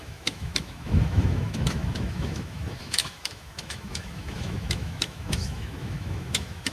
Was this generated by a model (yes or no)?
yes